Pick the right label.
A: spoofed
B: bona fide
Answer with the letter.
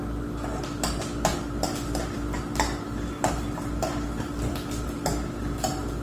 B